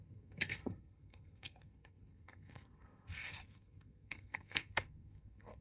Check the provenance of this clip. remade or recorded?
remade